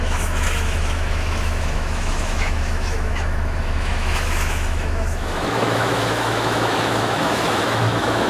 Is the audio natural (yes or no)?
no